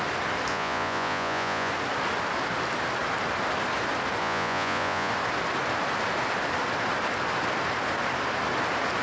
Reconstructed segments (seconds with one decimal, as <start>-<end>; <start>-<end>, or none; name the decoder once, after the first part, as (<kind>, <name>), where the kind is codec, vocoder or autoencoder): 0.5-1.7 (vocoder, Vocos); 4.2-5.1